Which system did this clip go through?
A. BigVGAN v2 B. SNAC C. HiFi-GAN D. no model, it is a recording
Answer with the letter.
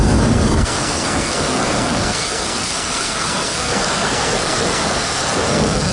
B